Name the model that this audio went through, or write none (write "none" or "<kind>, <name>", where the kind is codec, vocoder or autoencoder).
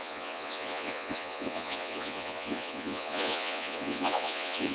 vocoder, Vocos